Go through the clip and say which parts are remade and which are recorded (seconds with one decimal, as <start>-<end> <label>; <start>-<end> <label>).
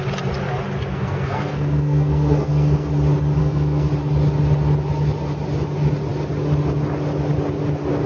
0.0-0.9 recorded; 0.9-2.9 remade; 2.9-3.4 recorded; 3.4-3.9 remade; 3.9-8.1 recorded